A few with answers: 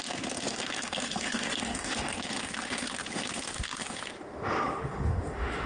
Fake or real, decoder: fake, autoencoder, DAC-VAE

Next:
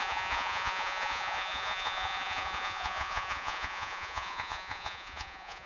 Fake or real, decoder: fake, vocoder, Vocos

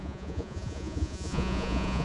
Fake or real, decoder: fake, vocoder, Vocos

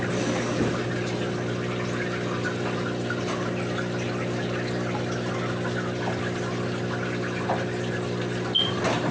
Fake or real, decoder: real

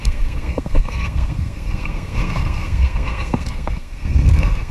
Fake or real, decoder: fake, codec, SNAC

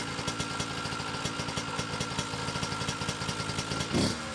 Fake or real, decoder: real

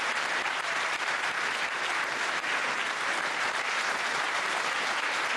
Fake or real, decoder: fake, vocoder, BigVGAN v2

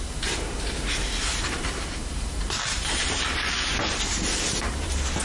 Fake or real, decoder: fake, vocoder, BigVGAN v2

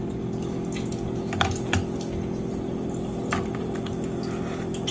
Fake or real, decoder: real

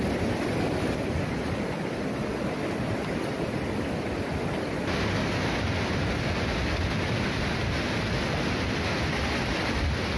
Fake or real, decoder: real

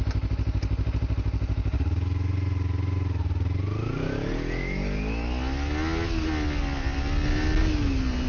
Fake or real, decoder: real